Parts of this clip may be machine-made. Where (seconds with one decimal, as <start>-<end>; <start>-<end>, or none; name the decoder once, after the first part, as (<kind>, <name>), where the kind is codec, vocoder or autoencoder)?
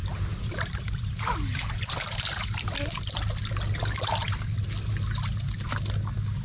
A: 0.0-3.0 (vocoder, BigVGAN v2); 4.2-5.1